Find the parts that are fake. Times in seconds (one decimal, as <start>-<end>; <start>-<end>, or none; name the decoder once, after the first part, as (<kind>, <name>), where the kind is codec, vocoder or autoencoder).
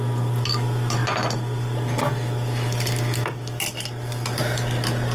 none